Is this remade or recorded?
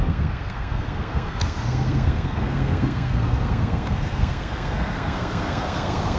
remade